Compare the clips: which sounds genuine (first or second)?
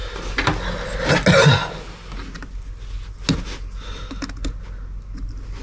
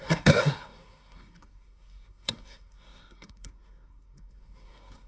first